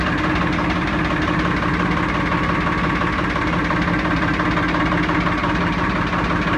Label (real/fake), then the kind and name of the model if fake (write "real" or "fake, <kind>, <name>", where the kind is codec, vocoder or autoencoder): real